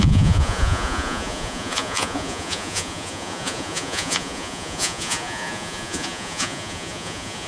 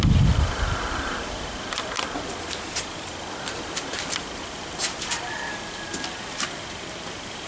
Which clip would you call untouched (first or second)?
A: second